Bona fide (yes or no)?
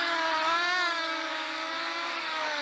no